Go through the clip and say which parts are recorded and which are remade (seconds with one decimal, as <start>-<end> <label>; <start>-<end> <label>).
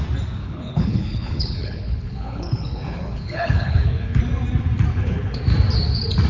0.0-0.4 recorded; 0.4-4.2 remade; 4.2-4.9 recorded; 4.9-5.4 remade; 5.4-6.3 recorded